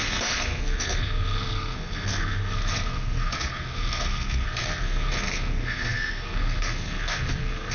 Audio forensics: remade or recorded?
remade